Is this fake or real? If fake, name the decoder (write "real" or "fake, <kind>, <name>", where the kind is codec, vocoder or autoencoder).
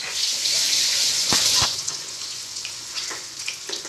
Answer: fake, vocoder, Vocos